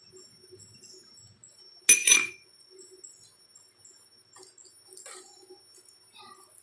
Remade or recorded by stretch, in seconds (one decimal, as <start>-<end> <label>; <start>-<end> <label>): 0.0-2.0 recorded; 2.0-2.8 remade; 2.8-6.6 recorded